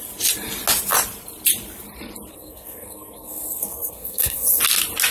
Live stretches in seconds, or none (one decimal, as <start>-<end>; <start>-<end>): 0.0-2.3; 4.6-5.1